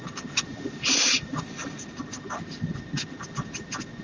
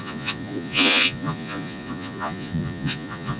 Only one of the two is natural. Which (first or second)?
first